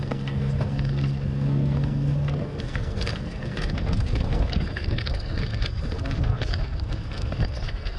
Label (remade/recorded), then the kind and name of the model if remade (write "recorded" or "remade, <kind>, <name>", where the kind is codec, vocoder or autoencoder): remade, codec, SNAC